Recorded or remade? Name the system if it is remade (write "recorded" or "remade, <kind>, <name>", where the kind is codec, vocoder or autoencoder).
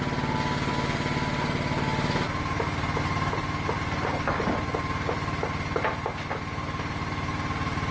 recorded